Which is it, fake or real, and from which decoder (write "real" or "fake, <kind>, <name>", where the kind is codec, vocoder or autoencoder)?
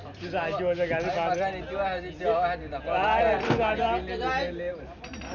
real